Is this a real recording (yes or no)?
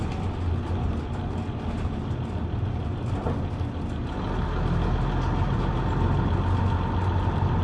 yes